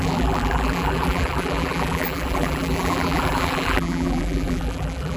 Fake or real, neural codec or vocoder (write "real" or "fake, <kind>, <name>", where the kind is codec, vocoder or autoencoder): fake, vocoder, BigVGAN v2